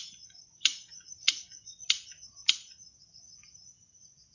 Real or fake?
fake